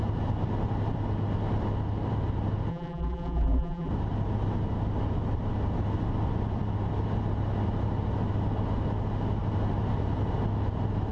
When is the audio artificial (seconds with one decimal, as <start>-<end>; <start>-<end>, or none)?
2.7-3.9